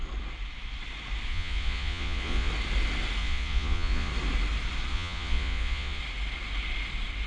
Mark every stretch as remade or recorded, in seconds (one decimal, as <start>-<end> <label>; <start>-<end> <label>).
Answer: 0.0-1.3 recorded; 1.3-2.5 remade; 2.5-3.2 recorded; 3.2-4.1 remade; 4.1-4.9 recorded; 4.9-6.0 remade; 6.0-7.3 recorded